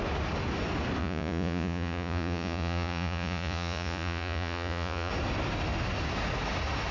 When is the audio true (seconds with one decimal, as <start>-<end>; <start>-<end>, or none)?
0.0-1.0; 5.1-6.9